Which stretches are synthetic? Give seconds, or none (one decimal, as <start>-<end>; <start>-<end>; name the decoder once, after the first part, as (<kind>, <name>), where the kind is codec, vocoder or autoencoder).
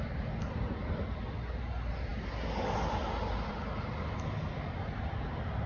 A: none